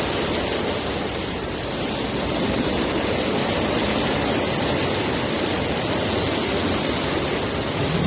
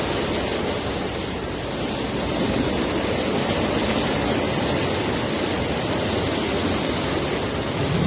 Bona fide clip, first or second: second